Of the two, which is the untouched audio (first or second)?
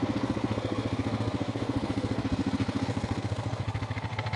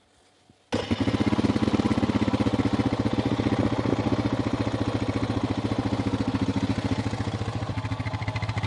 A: second